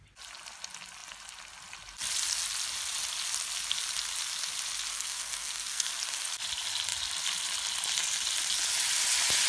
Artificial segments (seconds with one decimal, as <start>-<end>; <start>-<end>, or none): 4.9-5.9